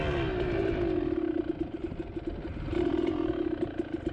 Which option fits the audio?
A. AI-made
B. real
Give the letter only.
B